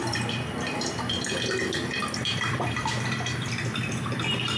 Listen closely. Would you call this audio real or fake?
fake